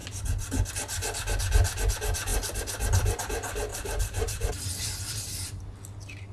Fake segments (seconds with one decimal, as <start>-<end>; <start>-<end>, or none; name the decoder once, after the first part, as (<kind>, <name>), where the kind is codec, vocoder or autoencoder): 3.7-4.5 (vocoder, BigVGAN v2)